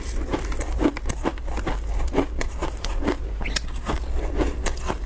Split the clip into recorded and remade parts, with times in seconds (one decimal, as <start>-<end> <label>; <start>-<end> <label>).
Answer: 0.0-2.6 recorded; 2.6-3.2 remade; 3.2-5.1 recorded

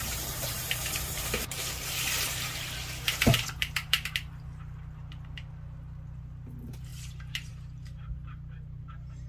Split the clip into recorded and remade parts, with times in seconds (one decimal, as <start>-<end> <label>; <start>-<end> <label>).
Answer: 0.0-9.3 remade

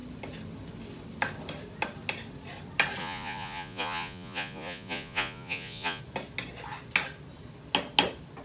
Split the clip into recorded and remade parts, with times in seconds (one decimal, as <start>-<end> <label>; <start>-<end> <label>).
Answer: 0.0-3.0 recorded; 3.0-6.0 remade; 6.0-8.4 recorded

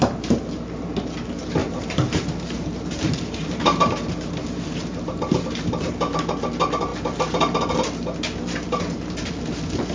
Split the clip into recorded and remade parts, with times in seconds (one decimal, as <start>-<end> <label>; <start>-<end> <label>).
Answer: 0.0-1.6 recorded; 1.6-5.9 remade; 5.9-9.9 recorded

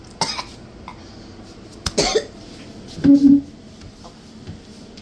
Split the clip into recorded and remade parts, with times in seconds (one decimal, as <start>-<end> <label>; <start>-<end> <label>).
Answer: 0.0-5.0 recorded

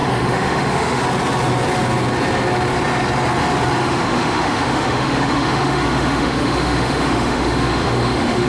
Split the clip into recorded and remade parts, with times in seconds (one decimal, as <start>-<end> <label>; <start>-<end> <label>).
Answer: 0.0-1.0 remade; 1.0-3.8 recorded; 3.8-8.5 remade